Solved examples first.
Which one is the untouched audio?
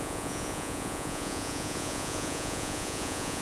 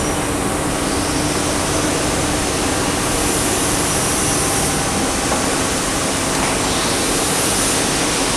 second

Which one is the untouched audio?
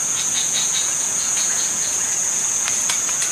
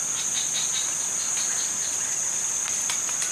second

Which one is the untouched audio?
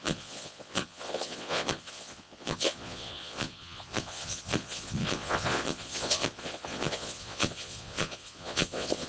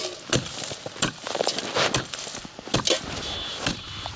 second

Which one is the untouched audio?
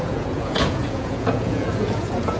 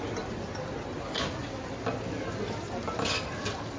second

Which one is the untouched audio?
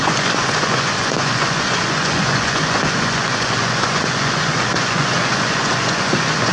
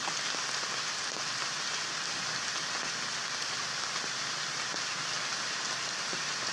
second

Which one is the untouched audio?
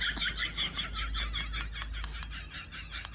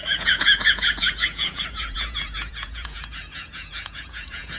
first